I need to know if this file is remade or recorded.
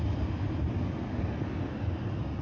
recorded